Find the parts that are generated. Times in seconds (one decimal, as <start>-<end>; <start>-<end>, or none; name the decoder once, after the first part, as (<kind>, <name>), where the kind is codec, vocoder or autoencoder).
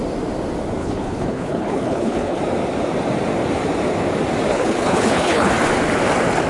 0.8-2.4 (codec, HILCodec); 4.5-5.5